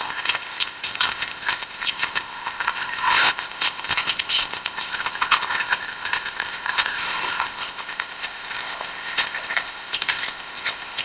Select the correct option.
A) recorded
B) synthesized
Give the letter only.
B